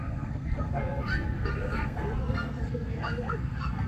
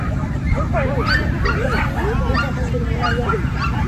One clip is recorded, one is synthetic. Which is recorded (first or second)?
second